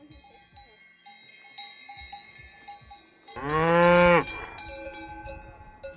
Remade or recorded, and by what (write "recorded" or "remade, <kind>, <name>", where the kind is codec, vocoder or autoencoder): recorded